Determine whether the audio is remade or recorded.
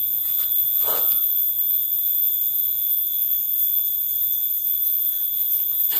remade